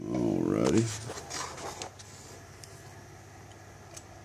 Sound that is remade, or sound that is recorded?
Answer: recorded